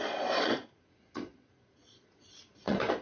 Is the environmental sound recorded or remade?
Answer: remade